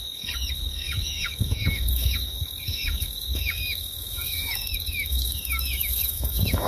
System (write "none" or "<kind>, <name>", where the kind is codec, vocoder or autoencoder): autoencoder, DAC-VAE